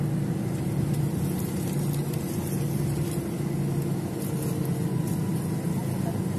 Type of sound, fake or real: real